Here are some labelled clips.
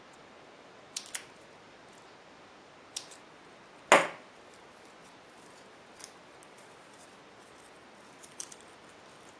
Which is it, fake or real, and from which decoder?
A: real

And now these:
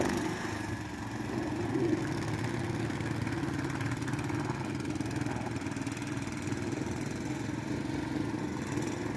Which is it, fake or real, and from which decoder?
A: real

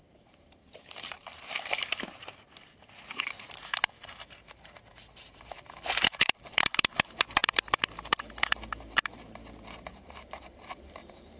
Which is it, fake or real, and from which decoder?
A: fake, vocoder, BigVGAN v2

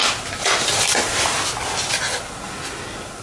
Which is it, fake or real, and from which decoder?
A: real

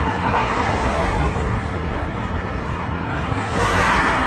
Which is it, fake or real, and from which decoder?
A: fake, codec, SNAC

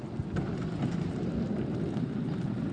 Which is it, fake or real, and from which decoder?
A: real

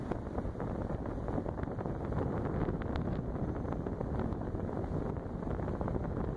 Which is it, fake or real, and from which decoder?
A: real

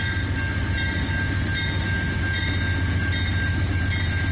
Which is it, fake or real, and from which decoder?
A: real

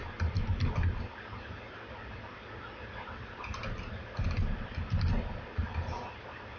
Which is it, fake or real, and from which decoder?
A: real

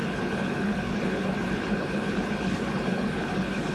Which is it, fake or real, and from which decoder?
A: fake, codec, HILCodec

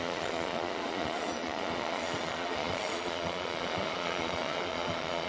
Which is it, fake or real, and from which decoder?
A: fake, vocoder, Vocos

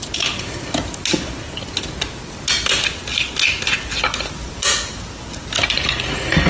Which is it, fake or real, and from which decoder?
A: real